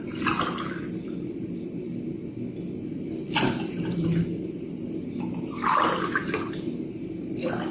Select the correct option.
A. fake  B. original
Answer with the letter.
B